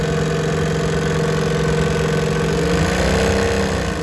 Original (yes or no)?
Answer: yes